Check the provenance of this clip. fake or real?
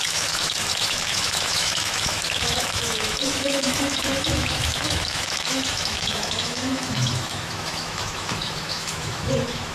fake